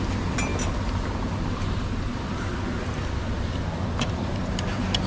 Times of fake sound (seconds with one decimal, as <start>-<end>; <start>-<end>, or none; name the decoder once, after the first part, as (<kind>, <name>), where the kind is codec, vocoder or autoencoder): 0.0-0.5 (vocoder, BigVGAN v2); 1.1-5.1

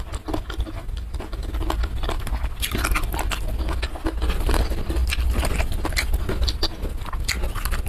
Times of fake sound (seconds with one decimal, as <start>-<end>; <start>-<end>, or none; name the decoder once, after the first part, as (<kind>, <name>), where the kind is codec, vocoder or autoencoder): none

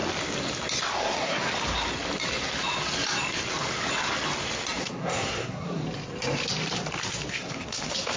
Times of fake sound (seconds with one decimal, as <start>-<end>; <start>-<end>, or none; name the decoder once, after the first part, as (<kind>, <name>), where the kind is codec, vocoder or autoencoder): 1.0-1.5 (codec, SNAC); 4.8-5.8; 7.3-8.2

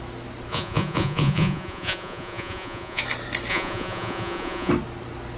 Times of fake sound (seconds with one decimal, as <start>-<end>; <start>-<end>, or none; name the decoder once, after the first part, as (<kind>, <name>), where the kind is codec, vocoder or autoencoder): 0.5-3.0 (vocoder, Vocos); 3.5-4.7

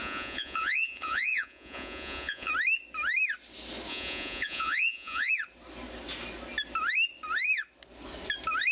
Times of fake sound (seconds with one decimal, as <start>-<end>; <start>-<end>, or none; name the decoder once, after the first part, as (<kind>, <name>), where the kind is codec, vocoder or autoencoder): 0.0-2.5 (vocoder, Vocos); 3.9-5.3

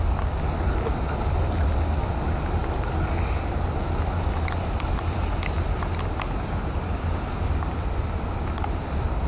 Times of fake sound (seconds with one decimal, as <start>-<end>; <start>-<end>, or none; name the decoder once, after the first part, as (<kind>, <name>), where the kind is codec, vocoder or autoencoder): none

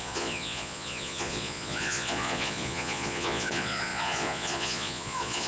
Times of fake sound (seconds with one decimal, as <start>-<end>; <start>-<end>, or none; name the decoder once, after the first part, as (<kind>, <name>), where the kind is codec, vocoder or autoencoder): 0.0-5.5 (vocoder, Vocos)